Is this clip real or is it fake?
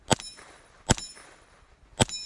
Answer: real